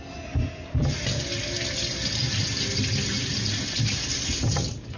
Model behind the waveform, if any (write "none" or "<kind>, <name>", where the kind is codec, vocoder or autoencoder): none